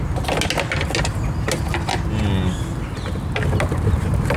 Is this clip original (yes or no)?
yes